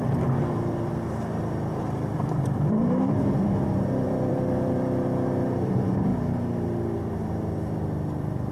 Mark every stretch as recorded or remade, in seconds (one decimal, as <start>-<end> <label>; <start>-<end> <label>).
0.0-6.1 remade; 6.1-7.1 recorded; 7.1-8.5 remade

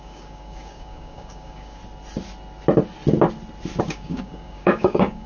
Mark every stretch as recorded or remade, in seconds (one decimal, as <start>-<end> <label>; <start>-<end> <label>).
0.0-1.8 remade; 1.8-3.8 recorded; 3.8-5.3 remade

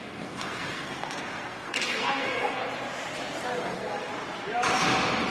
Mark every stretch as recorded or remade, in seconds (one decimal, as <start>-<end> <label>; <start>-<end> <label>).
0.0-2.6 remade; 2.6-3.6 recorded; 3.6-4.1 remade; 4.1-5.3 recorded

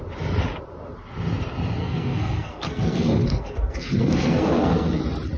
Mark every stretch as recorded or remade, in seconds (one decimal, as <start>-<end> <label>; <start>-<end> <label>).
0.0-1.8 recorded; 1.8-5.0 remade; 5.0-5.4 recorded

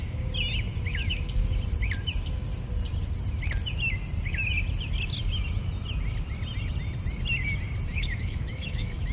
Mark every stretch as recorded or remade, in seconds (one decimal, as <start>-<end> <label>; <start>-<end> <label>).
0.0-7.9 recorded; 7.9-9.1 remade

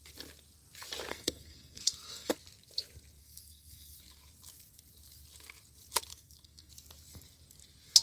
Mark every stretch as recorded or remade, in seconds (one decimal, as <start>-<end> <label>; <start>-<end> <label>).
0.0-1.1 recorded; 1.1-2.3 remade; 2.3-3.2 recorded; 3.2-4.0 remade; 4.0-6.1 recorded; 6.1-6.7 remade; 6.7-8.0 recorded

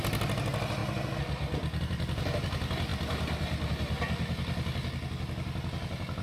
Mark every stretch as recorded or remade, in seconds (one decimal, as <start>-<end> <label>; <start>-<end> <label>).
0.0-6.2 recorded

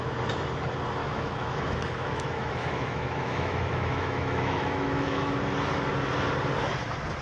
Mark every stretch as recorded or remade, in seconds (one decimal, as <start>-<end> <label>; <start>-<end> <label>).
0.0-1.0 recorded; 1.0-5.3 remade; 5.3-7.2 recorded